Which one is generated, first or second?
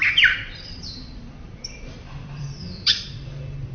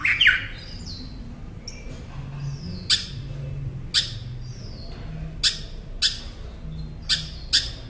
first